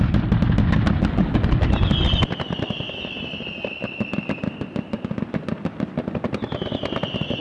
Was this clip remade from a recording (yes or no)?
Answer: no